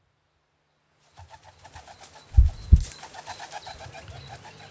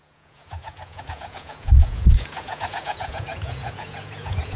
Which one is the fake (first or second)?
second